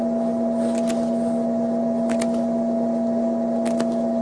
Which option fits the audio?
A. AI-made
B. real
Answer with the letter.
B